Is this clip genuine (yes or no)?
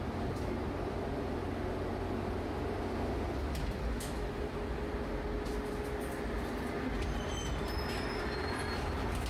yes